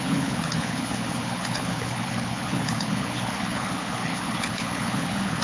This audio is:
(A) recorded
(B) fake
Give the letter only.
B